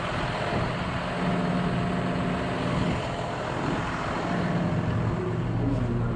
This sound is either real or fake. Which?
real